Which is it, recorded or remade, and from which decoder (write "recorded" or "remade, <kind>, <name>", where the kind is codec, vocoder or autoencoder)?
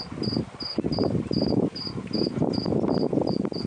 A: recorded